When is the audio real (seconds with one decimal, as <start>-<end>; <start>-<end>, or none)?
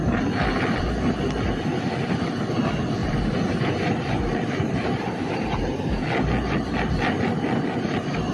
0.0-3.0; 6.0-8.3